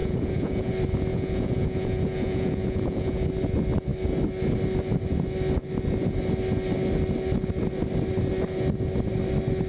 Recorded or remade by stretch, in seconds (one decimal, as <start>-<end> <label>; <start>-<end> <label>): 0.0-0.7 remade; 0.7-1.1 recorded; 1.1-3.3 remade; 3.3-9.7 recorded